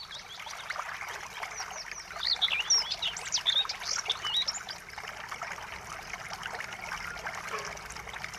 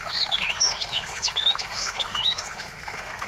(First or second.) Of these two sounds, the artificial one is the second